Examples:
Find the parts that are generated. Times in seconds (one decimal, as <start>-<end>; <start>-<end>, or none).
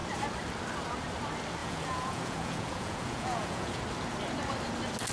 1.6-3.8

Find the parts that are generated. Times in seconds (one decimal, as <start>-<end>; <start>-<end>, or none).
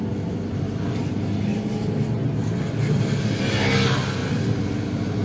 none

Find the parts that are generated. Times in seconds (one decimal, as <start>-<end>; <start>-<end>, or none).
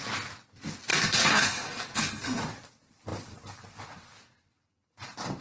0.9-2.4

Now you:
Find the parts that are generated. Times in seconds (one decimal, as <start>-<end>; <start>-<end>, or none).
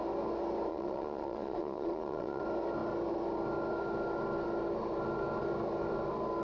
0.7-2.4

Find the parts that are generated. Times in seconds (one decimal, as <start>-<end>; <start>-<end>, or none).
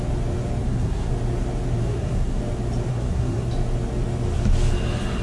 0.6-1.1; 1.8-2.4; 2.9-3.5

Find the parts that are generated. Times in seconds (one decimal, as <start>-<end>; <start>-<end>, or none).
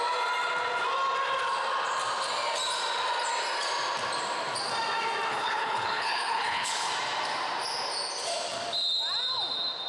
5.3-6.9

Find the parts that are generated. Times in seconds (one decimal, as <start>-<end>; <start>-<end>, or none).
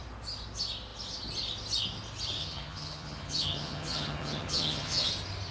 2.4-5.1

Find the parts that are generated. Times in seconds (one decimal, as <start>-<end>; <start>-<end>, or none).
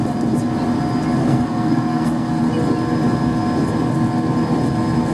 1.2-2.4